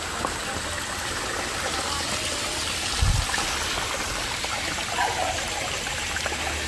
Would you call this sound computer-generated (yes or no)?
no